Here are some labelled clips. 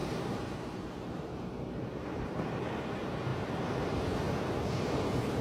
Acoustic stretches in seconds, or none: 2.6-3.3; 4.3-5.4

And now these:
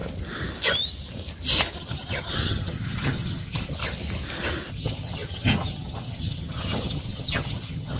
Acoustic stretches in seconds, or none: 0.0-1.8; 3.8-4.7

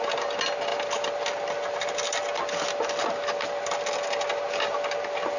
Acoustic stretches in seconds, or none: 0.0-0.7; 3.9-5.4